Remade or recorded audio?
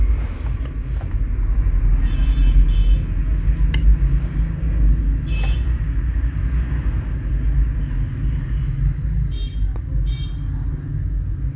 recorded